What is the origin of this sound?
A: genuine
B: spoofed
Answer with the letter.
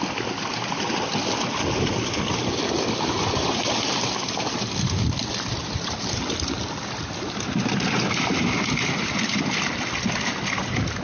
A